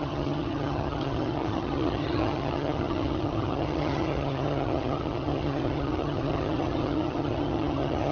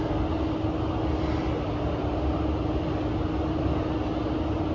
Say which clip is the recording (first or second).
second